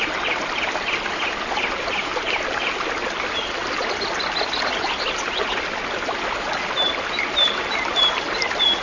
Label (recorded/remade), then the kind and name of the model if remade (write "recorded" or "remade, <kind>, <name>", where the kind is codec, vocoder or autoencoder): recorded